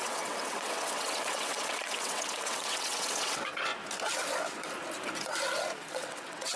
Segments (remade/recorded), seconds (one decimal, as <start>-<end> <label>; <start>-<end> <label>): 0.0-3.7 remade; 3.7-5.9 recorded; 5.9-6.6 remade